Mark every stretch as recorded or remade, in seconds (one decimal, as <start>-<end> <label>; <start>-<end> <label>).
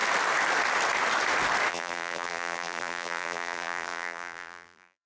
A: 0.0-1.7 recorded; 1.7-5.1 remade